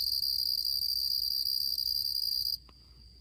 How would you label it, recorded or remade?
recorded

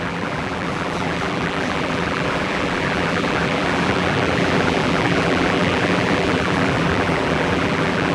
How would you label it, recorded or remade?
remade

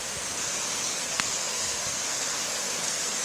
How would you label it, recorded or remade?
remade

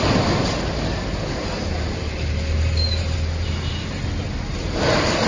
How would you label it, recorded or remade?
recorded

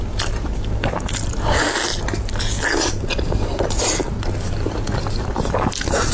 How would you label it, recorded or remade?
recorded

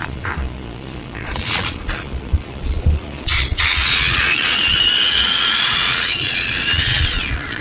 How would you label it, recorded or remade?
remade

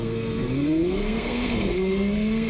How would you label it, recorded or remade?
remade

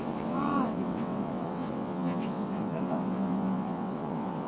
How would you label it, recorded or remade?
remade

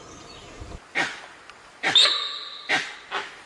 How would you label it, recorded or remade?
recorded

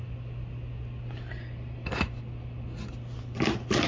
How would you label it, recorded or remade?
recorded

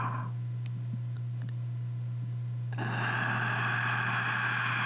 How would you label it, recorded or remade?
recorded